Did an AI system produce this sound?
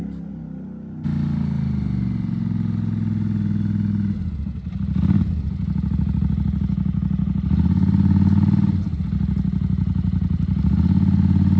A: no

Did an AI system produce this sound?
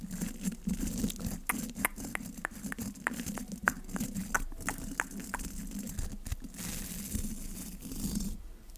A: no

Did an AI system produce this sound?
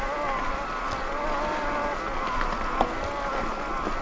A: no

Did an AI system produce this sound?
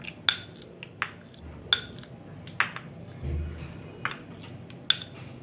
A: no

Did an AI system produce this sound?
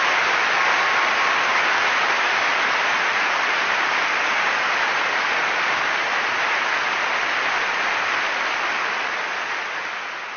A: no